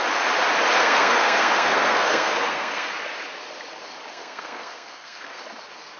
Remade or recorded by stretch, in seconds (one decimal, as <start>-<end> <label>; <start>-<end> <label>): 0.0-0.8 recorded; 0.8-2.9 remade; 2.9-4.1 recorded; 4.1-5.4 remade; 5.4-6.0 recorded